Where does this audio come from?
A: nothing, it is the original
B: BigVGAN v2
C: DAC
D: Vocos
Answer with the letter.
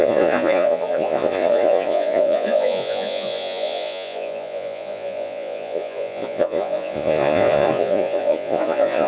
D